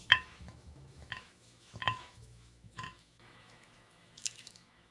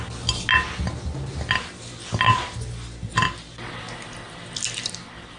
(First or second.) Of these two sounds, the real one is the second